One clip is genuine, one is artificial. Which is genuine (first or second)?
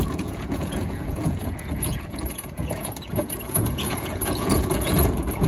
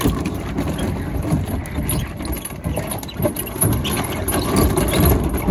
second